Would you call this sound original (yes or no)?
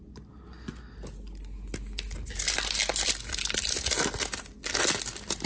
yes